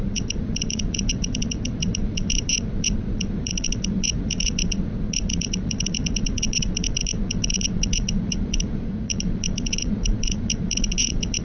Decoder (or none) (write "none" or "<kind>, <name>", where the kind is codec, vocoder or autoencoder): vocoder, Vocos